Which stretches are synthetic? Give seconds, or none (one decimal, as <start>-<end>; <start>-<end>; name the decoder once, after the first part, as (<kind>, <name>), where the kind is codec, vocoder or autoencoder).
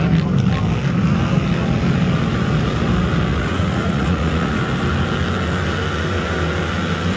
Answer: 3.3-4.6 (vocoder, Vocos)